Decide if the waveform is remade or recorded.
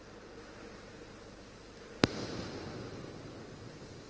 recorded